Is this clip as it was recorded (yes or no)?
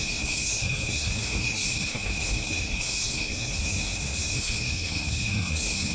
no